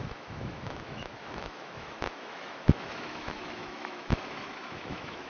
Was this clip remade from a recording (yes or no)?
yes